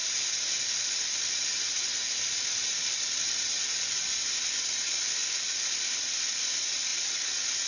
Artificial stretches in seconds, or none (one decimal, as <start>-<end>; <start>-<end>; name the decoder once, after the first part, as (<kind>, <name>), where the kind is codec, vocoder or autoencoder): none